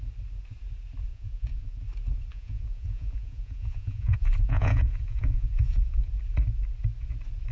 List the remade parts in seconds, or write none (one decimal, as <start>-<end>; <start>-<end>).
1.1-1.8; 2.3-6.1